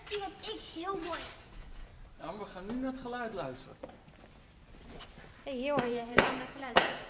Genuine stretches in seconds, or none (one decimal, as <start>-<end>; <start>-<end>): 0.0-1.4; 1.9-5.8